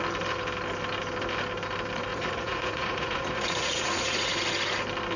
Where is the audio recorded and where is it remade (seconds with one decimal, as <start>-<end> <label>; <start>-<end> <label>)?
0.0-2.1 recorded; 2.1-4.3 remade; 4.3-5.2 recorded